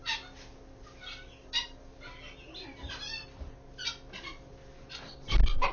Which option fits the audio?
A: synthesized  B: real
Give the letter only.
B